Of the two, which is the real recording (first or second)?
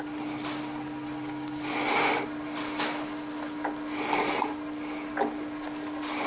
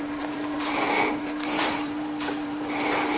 first